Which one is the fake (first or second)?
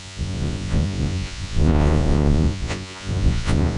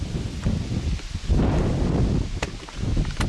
first